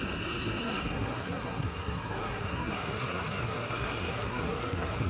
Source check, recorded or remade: remade